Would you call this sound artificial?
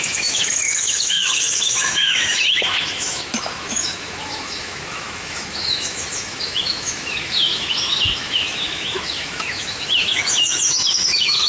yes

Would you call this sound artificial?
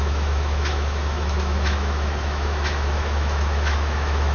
yes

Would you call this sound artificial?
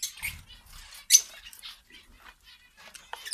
no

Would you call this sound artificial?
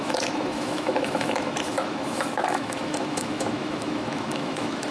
yes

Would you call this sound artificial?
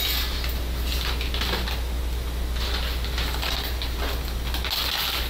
no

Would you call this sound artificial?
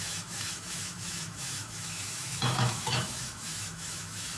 yes